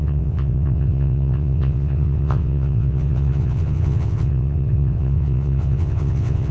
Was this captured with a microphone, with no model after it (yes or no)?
no